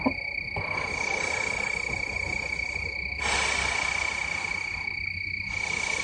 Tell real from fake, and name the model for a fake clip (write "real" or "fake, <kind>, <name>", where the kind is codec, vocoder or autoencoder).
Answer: real